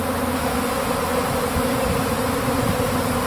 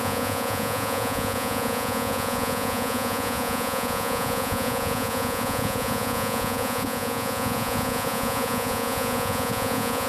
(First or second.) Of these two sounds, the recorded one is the first